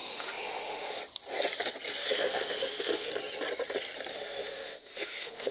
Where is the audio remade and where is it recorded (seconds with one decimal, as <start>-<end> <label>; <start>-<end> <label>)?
0.0-1.0 remade; 1.0-2.0 recorded; 2.0-3.1 remade; 3.1-4.1 recorded; 4.1-5.5 remade